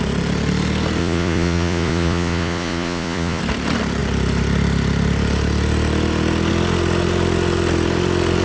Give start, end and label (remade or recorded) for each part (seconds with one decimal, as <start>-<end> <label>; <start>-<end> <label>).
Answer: 0.0-1.0 recorded; 1.0-3.4 remade; 3.4-8.4 recorded